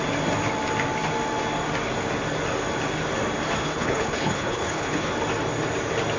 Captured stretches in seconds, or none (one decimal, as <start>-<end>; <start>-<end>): 0.0-3.6; 5.1-6.2